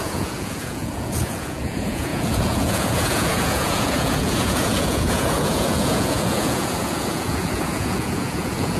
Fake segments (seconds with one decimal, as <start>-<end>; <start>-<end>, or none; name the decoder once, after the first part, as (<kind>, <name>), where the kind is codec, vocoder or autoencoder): 0.0-8.8 (vocoder, Vocos)